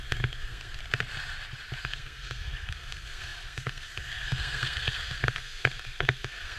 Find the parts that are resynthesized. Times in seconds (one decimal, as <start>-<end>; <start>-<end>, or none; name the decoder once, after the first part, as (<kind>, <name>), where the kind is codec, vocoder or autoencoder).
0.0-0.8 (codec, SNAC); 1.8-6.6